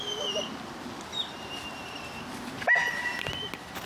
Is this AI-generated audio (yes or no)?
no